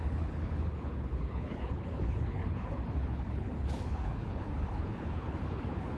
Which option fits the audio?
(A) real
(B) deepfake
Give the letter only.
B